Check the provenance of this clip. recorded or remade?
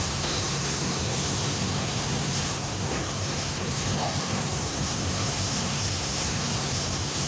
remade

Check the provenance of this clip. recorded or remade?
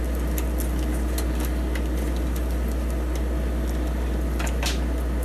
recorded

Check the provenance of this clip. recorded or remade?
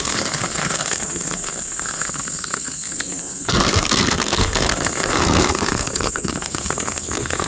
remade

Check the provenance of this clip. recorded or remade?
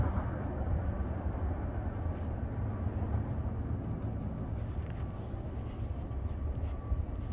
recorded